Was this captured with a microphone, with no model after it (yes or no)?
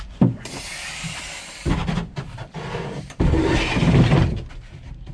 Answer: no